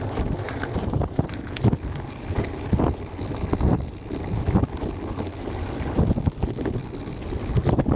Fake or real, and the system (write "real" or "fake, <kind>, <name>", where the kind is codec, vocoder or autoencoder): real